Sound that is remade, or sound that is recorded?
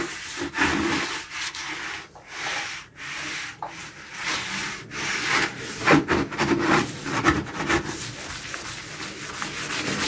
recorded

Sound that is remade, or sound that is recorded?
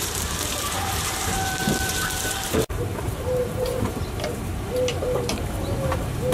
remade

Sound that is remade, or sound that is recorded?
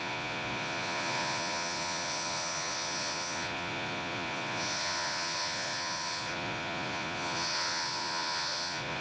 remade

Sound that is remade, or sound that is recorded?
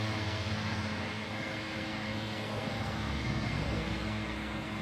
remade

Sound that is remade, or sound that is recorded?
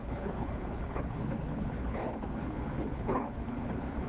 remade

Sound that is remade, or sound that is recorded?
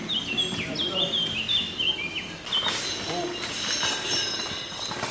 recorded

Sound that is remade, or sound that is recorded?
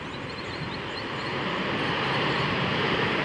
remade